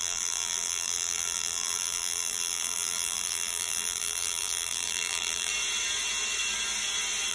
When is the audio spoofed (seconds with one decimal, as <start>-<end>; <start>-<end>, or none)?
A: 0.0-5.5